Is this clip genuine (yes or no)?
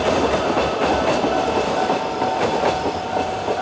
yes